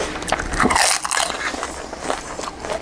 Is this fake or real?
real